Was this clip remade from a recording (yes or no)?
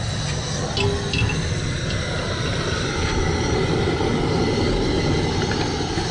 no